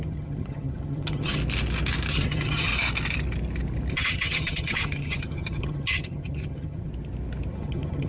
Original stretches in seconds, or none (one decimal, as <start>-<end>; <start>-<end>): 1.4-2.1; 2.7-3.9; 6.9-7.5